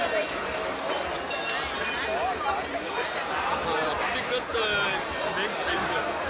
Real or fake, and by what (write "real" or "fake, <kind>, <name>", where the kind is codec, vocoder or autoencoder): real